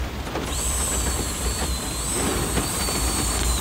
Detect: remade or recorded remade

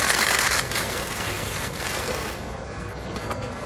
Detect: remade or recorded remade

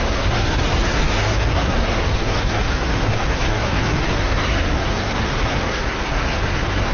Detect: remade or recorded remade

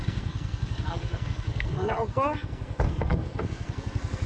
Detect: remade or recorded remade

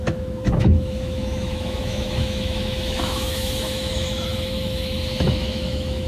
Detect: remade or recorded remade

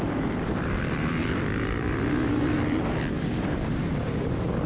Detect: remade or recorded remade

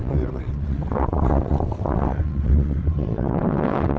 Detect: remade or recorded remade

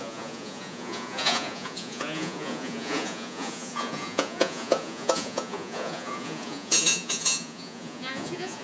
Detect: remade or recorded remade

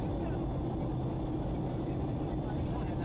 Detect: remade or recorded recorded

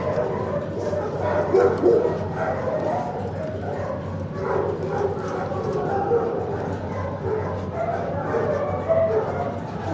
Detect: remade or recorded recorded